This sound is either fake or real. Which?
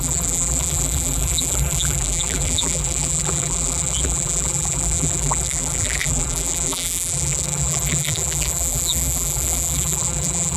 fake